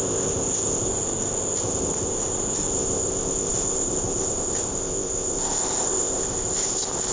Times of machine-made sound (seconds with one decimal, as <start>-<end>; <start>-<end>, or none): 0.0-0.9; 1.6-2.1; 2.7-7.1

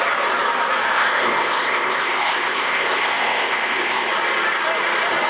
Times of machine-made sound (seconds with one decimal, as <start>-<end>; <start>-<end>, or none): 0.9-4.1